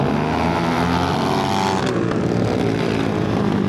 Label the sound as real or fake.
real